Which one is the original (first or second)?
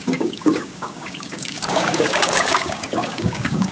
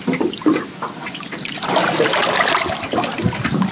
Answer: second